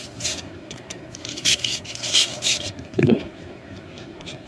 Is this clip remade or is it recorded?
remade